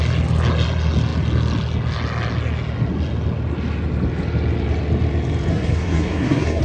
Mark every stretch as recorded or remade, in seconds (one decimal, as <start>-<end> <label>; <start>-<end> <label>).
0.0-5.5 recorded; 5.5-6.6 remade